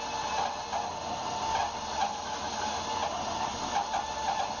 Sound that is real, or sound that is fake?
real